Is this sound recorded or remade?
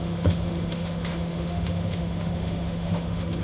remade